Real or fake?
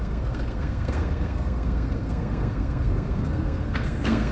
fake